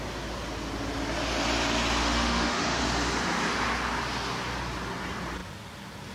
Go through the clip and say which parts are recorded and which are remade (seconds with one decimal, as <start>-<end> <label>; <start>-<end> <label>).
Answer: 0.0-2.0 recorded; 2.0-2.8 remade; 2.8-6.1 recorded